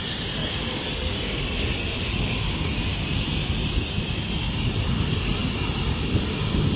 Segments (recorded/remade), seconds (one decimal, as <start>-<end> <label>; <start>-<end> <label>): 0.0-6.8 recorded